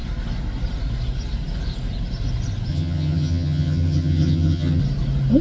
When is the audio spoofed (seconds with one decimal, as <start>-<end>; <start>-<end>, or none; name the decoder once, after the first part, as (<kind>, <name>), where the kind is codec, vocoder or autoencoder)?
2.7-4.8 (vocoder, HiFi-GAN)